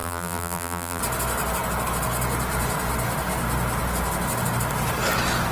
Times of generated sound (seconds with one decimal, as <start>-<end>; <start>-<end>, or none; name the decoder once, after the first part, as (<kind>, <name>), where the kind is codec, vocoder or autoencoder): 0.0-1.0 (vocoder, BigVGAN v2)